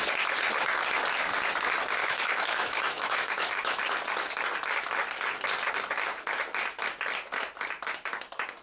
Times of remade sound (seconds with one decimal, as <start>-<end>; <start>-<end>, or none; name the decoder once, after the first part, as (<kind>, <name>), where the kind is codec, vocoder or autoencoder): 2.0-3.8 (autoencoder, DAC-VAE)